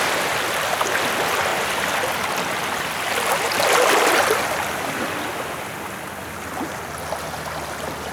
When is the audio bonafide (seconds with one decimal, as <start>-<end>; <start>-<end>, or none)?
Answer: 0.0-1.5; 5.7-8.1